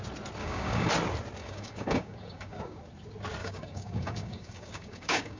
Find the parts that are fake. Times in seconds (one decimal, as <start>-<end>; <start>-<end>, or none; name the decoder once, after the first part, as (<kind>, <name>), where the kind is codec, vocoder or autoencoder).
0.4-0.9 (codec, DAC); 1.4-2.8; 3.4-5.4